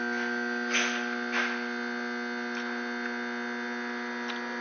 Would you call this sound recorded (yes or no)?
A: yes